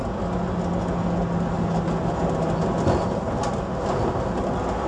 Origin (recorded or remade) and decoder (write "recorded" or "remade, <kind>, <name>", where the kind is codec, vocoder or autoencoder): recorded